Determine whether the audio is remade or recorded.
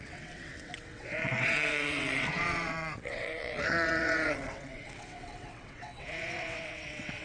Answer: remade